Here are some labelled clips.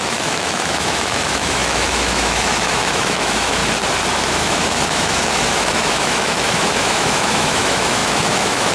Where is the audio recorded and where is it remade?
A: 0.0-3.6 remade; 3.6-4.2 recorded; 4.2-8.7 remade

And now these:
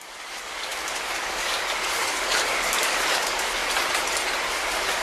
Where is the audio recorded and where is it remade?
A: 0.0-3.6 remade; 3.6-4.5 recorded; 4.5-5.0 remade